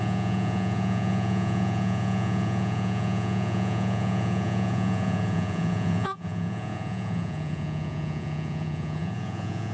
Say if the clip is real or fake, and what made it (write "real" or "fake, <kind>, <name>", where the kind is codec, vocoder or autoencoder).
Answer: fake, vocoder, Vocos